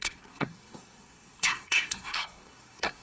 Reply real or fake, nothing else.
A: fake